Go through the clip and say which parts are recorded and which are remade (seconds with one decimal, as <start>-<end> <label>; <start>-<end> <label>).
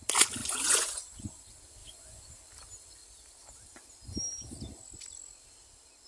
0.0-0.4 recorded; 0.4-1.3 remade; 1.3-1.8 recorded; 1.8-2.3 remade; 2.3-6.1 recorded